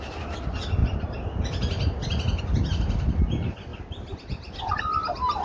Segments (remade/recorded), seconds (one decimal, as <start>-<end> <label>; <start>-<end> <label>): 0.0-0.8 recorded; 0.8-2.4 remade; 2.4-5.4 recorded